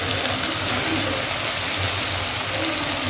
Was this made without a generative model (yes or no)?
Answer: yes